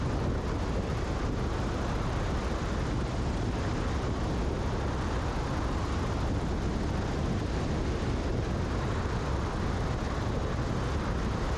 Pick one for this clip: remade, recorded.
recorded